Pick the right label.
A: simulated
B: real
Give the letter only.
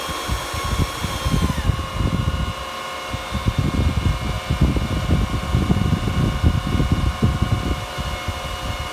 B